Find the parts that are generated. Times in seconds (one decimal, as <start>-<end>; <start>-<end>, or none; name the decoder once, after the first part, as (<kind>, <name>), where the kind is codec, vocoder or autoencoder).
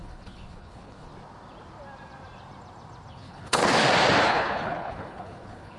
0.0-1.1 (codec, HILCodec); 3.1-3.6; 4.2-5.8